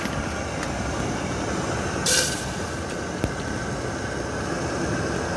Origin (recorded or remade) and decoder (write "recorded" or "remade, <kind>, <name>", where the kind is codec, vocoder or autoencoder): recorded